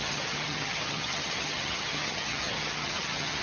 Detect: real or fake fake